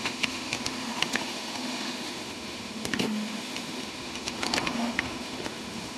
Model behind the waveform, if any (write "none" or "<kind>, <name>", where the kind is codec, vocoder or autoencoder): autoencoder, DAC-VAE